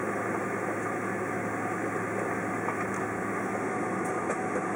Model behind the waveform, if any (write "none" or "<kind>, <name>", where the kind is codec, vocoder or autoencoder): none